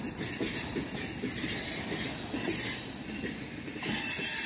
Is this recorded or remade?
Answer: remade